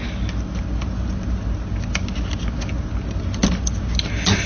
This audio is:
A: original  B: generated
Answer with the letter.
A